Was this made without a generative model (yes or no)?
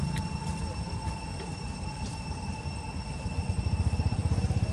no